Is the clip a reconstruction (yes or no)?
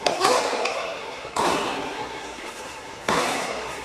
yes